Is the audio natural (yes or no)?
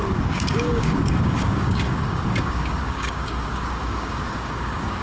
no